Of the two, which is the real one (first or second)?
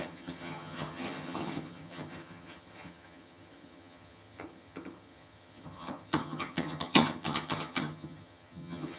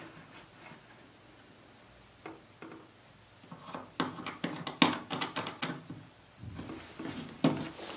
second